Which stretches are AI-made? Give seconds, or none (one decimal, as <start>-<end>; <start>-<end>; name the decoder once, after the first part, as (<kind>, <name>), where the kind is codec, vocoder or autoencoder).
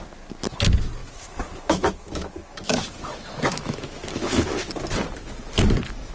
1.0-4.7 (autoencoder, DAC-VAE)